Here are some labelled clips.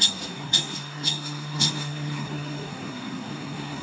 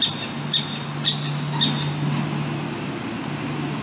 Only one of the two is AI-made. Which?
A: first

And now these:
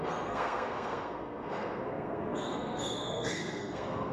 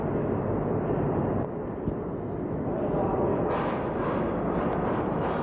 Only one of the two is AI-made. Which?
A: first